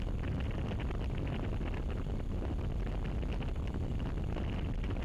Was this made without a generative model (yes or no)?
yes